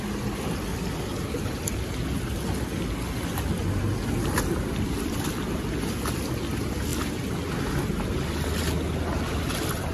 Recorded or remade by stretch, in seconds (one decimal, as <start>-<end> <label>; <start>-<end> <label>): 0.0-9.9 recorded